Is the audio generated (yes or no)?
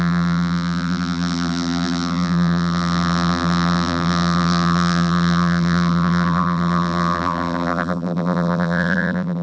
yes